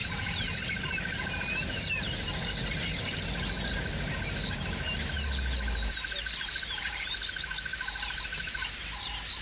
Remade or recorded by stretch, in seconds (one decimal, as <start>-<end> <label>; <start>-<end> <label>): 0.0-9.4 recorded